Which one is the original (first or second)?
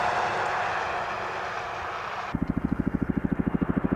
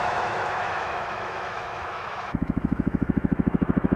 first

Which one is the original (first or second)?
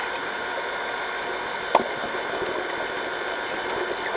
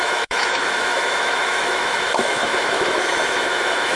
first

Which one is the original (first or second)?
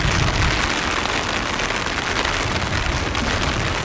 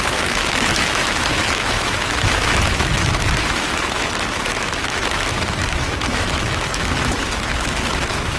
first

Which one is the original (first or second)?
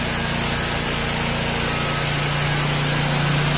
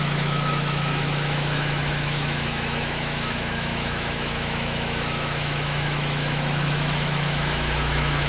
first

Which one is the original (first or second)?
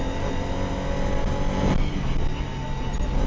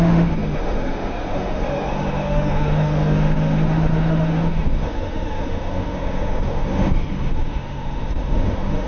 first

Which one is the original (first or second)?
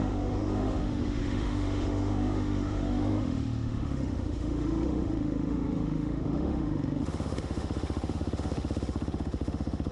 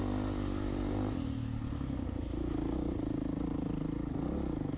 second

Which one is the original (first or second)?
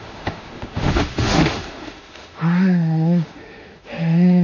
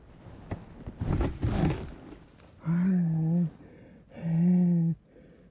second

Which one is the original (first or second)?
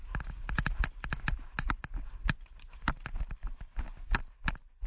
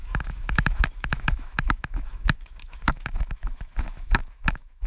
first